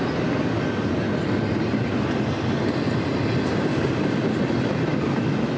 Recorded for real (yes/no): yes